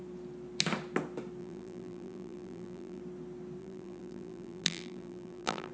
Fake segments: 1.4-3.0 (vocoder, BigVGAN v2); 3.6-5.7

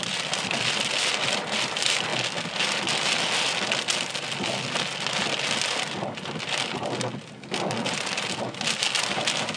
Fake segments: none